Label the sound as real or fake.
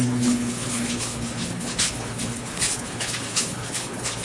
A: fake